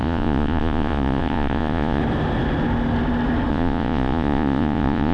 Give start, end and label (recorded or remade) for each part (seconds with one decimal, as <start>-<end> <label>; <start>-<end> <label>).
0.0-2.0 remade; 2.0-3.5 recorded; 3.5-5.1 remade